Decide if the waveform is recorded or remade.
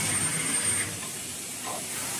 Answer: recorded